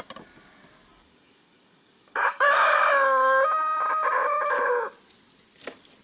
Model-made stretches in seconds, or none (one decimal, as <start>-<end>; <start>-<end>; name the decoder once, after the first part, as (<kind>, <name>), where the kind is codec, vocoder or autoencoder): 0.9-2.8 (codec, DAC)